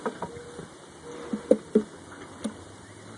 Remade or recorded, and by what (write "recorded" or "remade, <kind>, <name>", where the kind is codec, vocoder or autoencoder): recorded